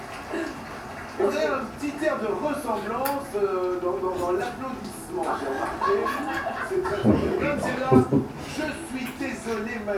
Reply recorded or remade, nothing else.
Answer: recorded